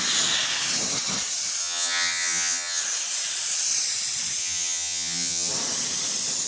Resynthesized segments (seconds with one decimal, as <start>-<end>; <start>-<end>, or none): 1.6-2.8; 4.4-5.5